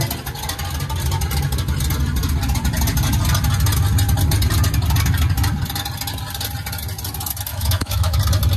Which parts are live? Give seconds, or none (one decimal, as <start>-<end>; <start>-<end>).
0.0-7.5; 8.2-8.6

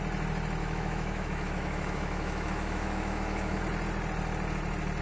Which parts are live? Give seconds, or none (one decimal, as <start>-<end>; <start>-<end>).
0.0-0.6; 3.6-5.0

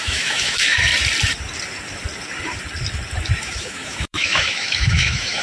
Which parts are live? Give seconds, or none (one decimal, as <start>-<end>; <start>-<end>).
0.9-3.4

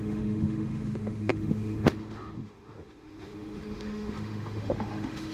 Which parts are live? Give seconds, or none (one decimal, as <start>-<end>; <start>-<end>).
none

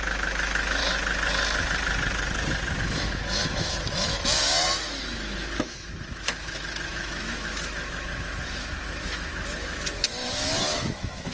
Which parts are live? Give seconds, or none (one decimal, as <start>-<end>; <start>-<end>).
0.8-2.8